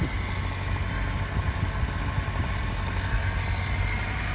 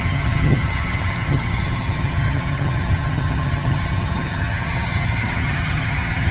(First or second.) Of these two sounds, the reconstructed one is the second